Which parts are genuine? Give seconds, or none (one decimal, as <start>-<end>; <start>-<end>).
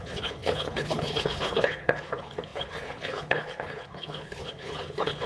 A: none